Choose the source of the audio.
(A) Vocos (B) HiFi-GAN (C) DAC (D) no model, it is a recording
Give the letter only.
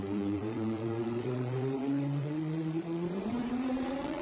A